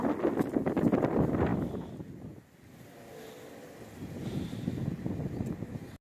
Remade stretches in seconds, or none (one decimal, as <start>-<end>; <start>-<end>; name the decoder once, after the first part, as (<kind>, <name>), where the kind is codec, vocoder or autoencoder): none